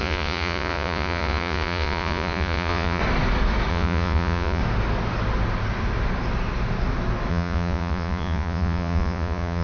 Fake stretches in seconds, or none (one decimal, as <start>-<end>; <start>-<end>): 0.0-3.0; 3.7-4.6; 7.3-9.6